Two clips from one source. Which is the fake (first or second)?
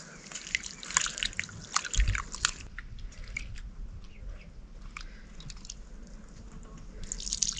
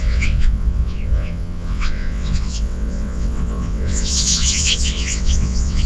second